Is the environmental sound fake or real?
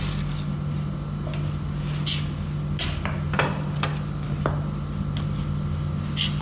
real